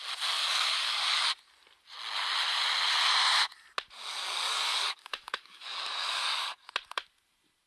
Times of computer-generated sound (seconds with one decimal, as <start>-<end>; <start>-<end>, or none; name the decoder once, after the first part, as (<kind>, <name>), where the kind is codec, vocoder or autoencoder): 0.4-1.3 (codec, DAC); 4.1-6.7